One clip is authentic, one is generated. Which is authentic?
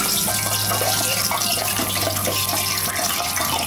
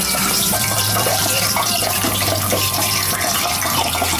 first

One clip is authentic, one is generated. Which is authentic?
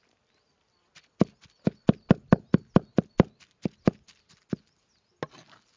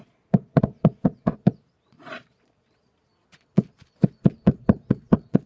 first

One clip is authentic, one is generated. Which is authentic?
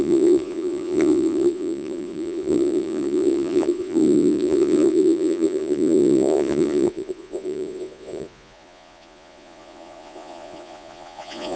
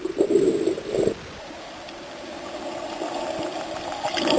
second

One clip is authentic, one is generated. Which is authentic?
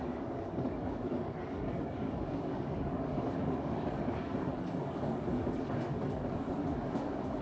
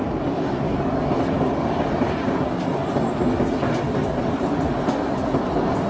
second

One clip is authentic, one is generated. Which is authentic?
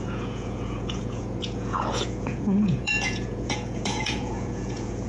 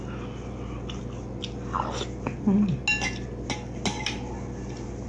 second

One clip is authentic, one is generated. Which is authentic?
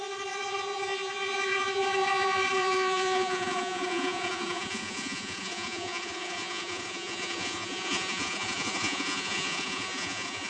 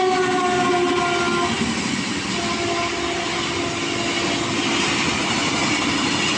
second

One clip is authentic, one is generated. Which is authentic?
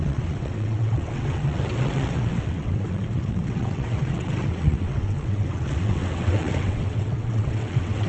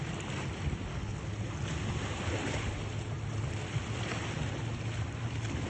second